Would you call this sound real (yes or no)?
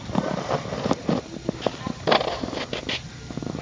yes